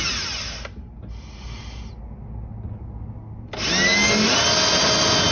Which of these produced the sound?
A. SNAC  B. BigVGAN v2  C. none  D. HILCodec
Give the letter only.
C